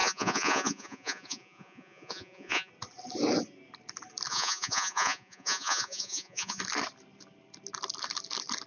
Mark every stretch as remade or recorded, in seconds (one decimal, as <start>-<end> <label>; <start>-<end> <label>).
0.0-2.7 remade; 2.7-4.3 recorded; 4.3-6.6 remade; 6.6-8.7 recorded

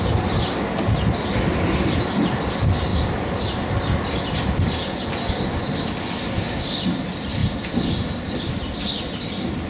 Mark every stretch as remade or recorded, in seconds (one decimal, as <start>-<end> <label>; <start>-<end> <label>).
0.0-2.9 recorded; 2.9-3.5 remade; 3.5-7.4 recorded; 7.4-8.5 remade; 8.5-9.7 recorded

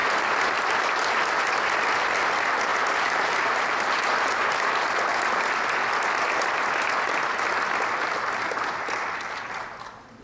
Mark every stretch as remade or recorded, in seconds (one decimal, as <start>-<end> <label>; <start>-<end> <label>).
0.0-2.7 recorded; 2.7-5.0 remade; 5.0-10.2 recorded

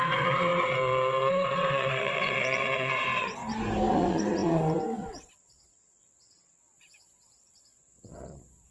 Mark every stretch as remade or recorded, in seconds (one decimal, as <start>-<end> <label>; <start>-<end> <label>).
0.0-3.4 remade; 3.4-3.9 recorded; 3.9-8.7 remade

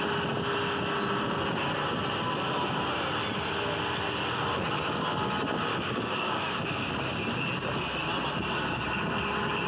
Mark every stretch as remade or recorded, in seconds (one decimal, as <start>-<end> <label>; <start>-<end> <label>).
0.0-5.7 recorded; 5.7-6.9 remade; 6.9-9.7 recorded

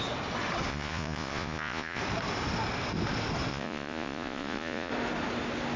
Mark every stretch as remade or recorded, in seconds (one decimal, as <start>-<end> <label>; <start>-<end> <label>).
0.0-0.7 recorded; 0.7-2.0 remade; 2.0-3.5 recorded; 3.5-4.9 remade; 4.9-5.8 recorded